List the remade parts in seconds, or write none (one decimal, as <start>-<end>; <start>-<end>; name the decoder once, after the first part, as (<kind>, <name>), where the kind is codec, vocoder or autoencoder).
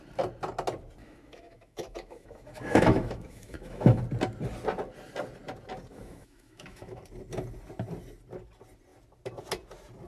1.0-4.0 (autoencoder, DAC-VAE); 5.9-7.0